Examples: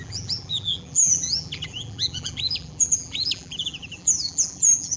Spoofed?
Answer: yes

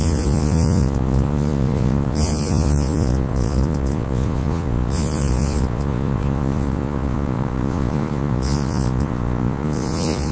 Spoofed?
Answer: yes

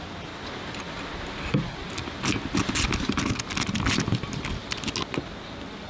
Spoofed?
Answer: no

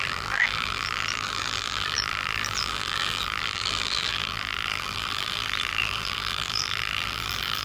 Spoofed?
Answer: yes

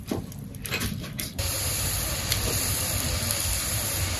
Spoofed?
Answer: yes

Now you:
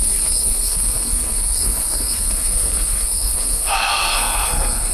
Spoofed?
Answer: yes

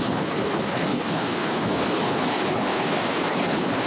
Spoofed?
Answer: yes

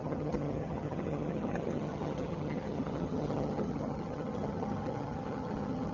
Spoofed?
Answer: yes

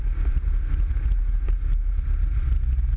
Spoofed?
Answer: no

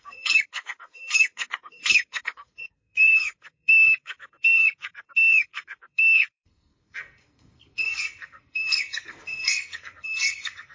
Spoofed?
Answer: yes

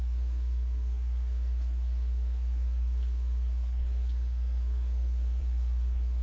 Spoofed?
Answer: yes